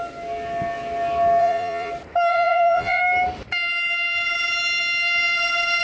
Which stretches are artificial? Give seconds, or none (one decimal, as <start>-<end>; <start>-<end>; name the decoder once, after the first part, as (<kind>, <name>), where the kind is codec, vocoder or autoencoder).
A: 1.4-1.9 (vocoder, Vocos); 2.3-3.0